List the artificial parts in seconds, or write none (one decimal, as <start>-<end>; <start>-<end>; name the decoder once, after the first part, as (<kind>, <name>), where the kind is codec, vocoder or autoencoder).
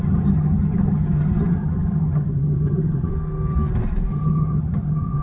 0.0-3.1 (vocoder, HiFi-GAN); 4.1-5.2